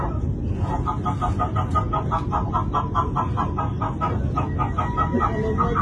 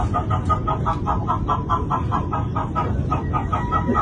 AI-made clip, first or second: second